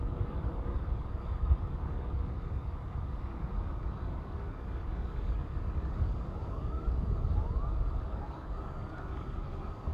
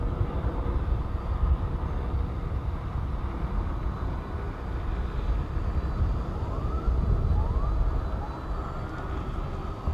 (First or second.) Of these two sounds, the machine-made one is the first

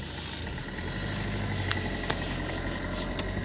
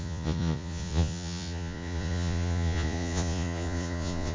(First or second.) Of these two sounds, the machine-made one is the second